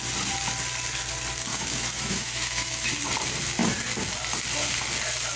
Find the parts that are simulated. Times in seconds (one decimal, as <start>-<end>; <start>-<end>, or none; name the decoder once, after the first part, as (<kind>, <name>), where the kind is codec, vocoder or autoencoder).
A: 1.5-2.9 (autoencoder, DAC-VAE)